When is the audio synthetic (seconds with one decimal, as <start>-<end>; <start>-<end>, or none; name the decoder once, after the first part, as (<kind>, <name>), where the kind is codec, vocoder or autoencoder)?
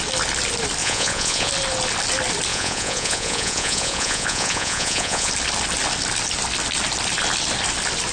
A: 0.8-1.5 (vocoder, Vocos); 2.5-5.3